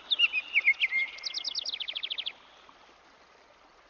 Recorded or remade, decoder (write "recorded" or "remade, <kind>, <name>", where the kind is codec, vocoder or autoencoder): recorded